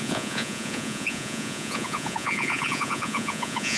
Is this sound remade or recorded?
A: remade